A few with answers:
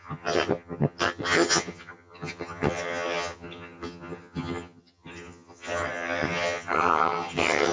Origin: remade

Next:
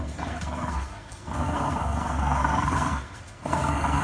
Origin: remade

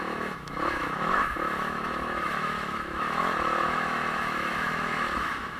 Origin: remade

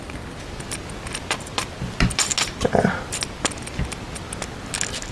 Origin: recorded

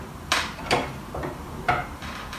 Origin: remade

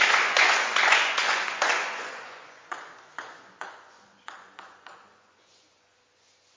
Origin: remade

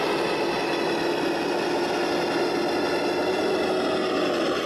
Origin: recorded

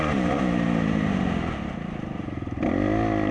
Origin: recorded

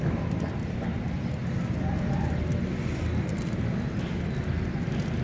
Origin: recorded